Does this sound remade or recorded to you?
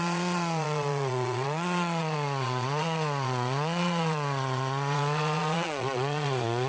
remade